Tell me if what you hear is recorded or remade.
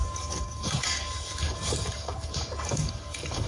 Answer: remade